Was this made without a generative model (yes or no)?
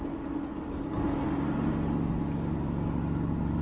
yes